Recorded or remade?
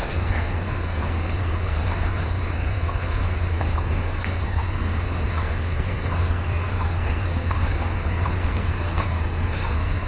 remade